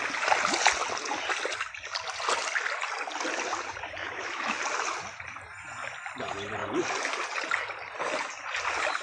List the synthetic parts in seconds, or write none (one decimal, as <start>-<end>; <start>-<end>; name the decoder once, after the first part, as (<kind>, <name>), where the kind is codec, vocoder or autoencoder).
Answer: 4.0-4.6 (autoencoder, DAC-VAE)